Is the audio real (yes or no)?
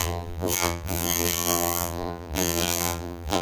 no